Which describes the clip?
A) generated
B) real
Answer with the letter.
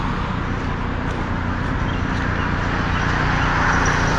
B